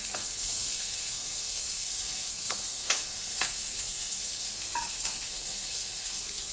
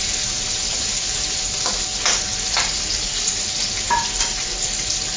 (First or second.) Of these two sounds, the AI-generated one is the first